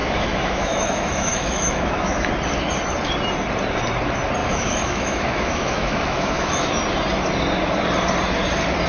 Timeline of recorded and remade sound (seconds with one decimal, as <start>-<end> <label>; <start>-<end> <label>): 0.0-2.3 remade; 2.3-4.4 recorded; 4.4-6.8 remade; 6.8-8.9 recorded